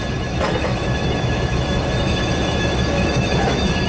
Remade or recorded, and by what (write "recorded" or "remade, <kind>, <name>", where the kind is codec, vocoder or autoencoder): remade, autoencoder, DAC-VAE